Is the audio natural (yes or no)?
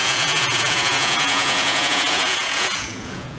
no